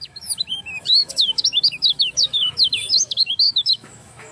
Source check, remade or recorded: remade